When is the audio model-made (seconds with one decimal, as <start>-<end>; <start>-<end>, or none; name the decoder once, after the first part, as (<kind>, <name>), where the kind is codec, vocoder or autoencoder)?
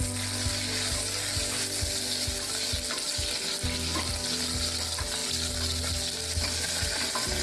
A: none